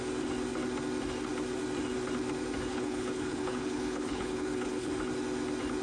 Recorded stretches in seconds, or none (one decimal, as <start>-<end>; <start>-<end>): 0.0-2.7; 4.9-5.8